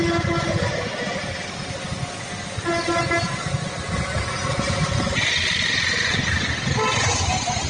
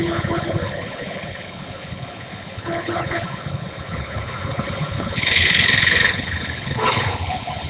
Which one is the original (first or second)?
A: first